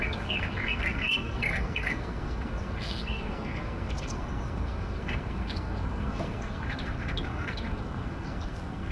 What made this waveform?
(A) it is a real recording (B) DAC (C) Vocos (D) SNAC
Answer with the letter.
D